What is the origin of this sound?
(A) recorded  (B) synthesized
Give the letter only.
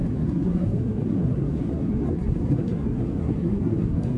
B